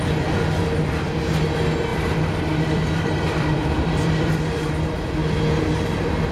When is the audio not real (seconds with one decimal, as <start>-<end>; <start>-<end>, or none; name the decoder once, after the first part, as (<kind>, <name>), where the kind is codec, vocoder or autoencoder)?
1.9-4.7 (vocoder, BigVGAN v2)